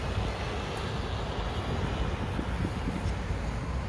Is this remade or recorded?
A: recorded